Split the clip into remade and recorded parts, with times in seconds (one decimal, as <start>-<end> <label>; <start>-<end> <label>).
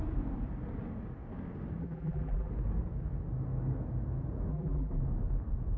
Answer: 0.0-1.8 recorded; 1.8-2.5 remade; 2.5-4.5 recorded; 4.5-5.0 remade; 5.0-5.8 recorded